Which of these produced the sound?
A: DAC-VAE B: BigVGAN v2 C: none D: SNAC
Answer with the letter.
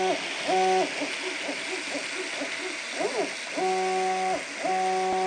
C